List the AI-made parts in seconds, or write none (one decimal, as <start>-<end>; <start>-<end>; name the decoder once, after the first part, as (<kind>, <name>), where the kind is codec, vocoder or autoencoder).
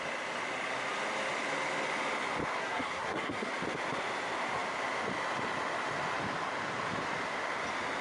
2.6-3.5 (codec, SNAC)